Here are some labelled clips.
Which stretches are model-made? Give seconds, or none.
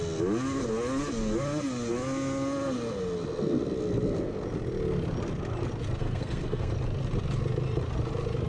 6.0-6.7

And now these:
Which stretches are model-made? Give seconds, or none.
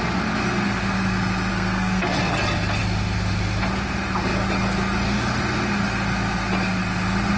1.5-2.3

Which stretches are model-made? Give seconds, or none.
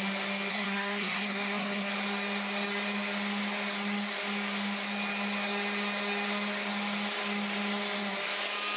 0.5-1.9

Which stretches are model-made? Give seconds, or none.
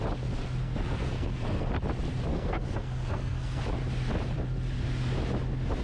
0.6-1.7; 2.3-3.6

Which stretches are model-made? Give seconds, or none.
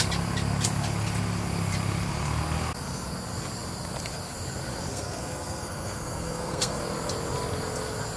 4.9-6.8